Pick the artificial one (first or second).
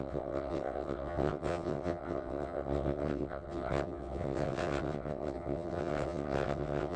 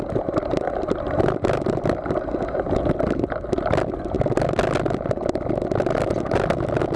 first